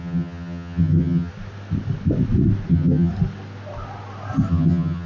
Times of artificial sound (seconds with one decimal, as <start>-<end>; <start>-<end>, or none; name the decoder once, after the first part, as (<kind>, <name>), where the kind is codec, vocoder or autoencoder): 0.0-1.3 (vocoder, HiFi-GAN); 2.7-3.1; 4.5-5.1